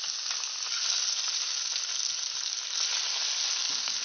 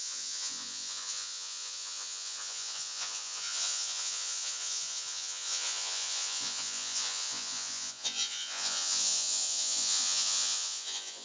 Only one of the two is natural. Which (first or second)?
first